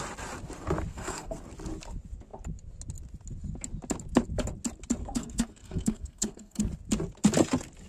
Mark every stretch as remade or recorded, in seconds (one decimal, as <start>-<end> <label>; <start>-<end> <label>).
0.0-0.9 recorded; 0.9-1.4 remade; 1.4-5.0 recorded; 5.0-6.6 remade; 6.6-7.9 recorded